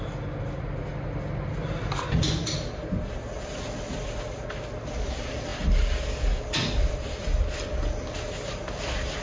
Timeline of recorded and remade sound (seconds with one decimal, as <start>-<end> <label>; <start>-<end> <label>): 0.0-9.2 recorded